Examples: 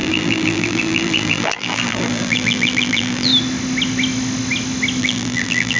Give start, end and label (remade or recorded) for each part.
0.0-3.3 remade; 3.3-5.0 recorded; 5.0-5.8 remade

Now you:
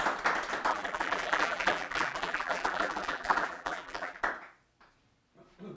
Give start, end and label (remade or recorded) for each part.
0.0-0.7 recorded; 0.7-4.2 remade; 4.2-5.8 recorded

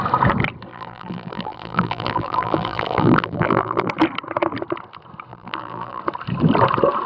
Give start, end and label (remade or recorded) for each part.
0.0-0.7 recorded; 0.7-3.9 remade; 3.9-5.3 recorded; 5.3-6.0 remade; 6.0-7.1 recorded

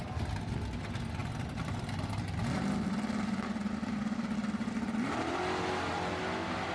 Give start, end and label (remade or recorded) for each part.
0.0-1.2 recorded; 1.2-2.1 remade; 2.1-6.7 recorded

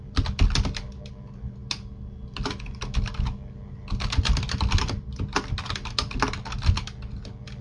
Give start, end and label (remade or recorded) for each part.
0.0-7.6 recorded